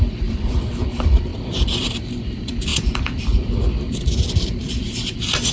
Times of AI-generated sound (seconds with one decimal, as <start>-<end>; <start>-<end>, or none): 0.0-5.5